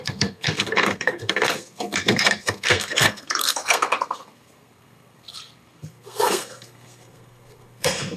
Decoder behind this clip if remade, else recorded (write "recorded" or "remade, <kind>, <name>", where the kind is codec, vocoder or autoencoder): remade, codec, SNAC